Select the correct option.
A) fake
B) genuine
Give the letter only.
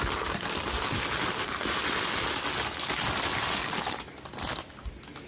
B